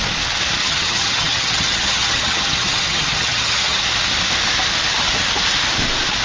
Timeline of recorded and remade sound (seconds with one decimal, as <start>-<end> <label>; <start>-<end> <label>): 0.0-0.6 recorded; 0.6-3.8 remade; 3.8-6.2 recorded

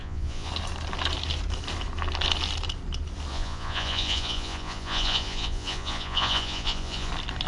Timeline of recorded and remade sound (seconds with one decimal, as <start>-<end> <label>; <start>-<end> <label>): 0.0-0.5 remade; 0.5-3.3 recorded; 3.3-7.1 remade; 7.1-7.5 recorded

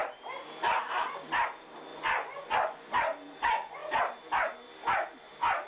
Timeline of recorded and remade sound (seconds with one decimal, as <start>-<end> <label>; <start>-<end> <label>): 0.0-1.9 recorded; 1.9-2.9 remade; 2.9-5.7 recorded

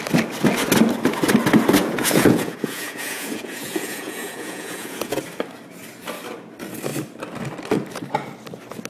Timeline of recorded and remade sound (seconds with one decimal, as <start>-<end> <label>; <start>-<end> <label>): 0.0-1.8 recorded; 1.8-5.2 remade; 5.2-8.9 recorded

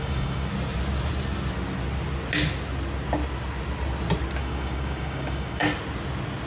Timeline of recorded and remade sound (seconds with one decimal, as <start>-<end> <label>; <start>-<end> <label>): 0.0-0.5 remade; 0.5-4.4 recorded; 4.4-5.6 remade; 5.6-6.5 recorded